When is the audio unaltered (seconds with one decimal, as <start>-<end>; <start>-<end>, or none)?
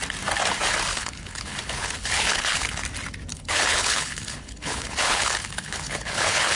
0.0-0.9; 2.8-3.3